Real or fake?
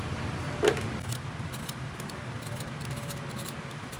real